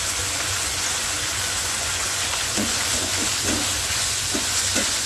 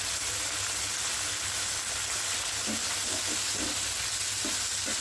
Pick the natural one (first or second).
second